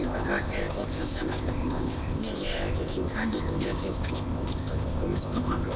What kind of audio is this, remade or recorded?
remade